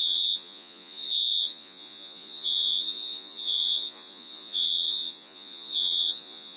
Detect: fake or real fake